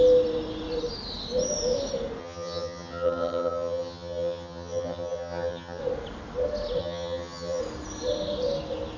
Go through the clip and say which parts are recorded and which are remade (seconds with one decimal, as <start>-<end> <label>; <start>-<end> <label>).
0.0-2.2 recorded; 2.2-5.8 remade; 5.8-6.8 recorded; 6.8-7.6 remade; 7.6-9.0 recorded